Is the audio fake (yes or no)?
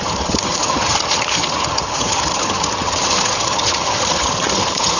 yes